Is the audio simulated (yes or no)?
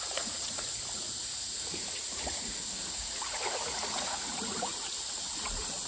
yes